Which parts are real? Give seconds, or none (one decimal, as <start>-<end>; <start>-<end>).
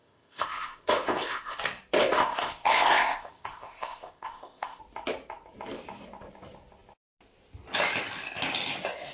1.6-2.0; 4.8-9.1